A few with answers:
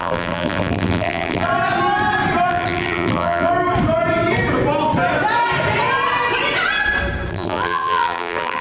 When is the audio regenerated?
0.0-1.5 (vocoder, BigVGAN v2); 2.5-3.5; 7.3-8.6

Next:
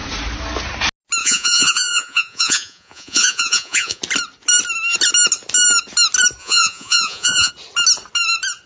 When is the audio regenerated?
1.2-4.0 (vocoder, Vocos); 6.4-7.5

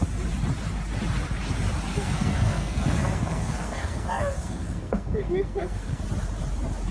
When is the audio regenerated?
1.9-6.0 (codec, SNAC)

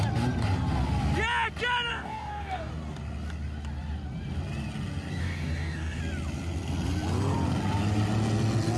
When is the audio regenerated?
1.9-2.7 (codec, DAC); 5.2-6.0

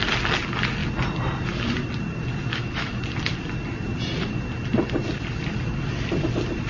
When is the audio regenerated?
2.5-3.0 (autoencoder, DAC-VAE)

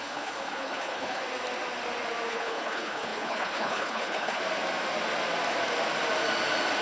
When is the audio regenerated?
0.0-1.2 (codec, HILCodec); 2.3-4.4

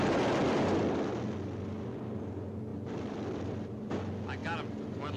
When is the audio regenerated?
2.7-3.7 (vocoder, BigVGAN v2)